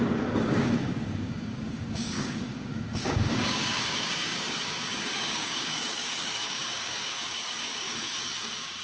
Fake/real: fake